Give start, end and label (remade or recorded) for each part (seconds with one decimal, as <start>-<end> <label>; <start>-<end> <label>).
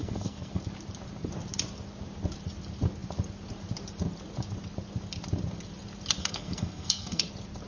0.0-0.6 remade; 0.6-6.2 recorded; 6.2-7.3 remade; 7.3-7.7 recorded